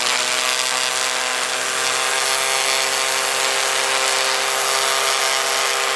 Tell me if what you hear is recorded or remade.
recorded